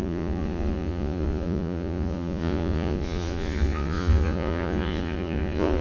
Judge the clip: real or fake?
fake